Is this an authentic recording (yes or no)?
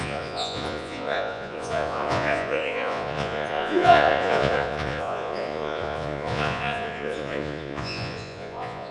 no